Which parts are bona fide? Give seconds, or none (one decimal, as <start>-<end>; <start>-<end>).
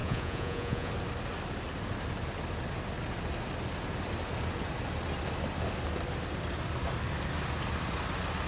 0.9-8.5